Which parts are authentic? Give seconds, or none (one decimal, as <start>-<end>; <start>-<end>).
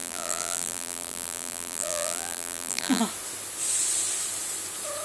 3.0-5.0